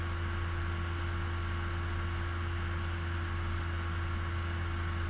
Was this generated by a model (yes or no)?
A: no